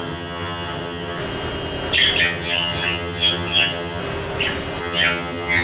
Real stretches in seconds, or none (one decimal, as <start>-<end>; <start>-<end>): 1.2-2.2; 4.0-4.8